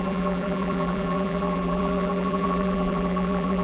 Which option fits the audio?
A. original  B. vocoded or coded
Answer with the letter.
B